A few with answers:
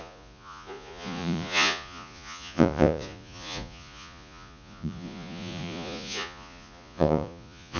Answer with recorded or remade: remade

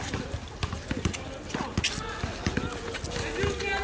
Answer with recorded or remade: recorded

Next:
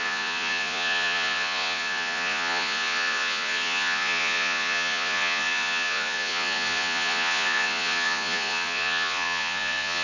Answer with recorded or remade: remade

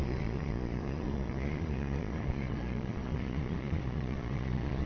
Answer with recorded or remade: remade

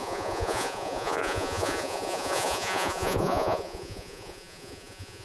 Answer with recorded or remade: remade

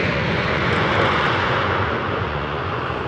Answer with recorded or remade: remade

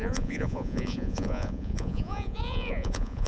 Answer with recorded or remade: remade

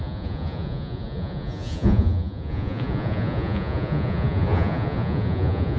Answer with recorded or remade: remade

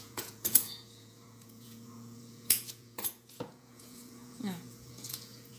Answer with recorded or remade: remade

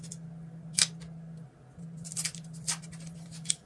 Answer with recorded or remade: recorded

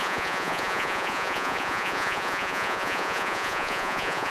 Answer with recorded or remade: remade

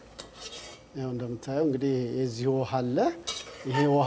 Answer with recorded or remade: recorded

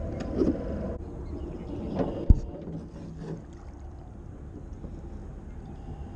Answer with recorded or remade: recorded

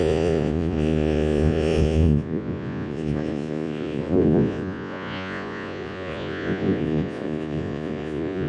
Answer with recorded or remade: remade